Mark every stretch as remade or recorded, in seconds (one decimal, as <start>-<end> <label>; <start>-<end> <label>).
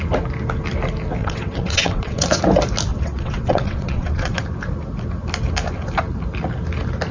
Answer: 0.0-1.2 recorded; 1.2-2.4 remade; 2.4-2.9 recorded; 2.9-4.4 remade; 4.4-7.1 recorded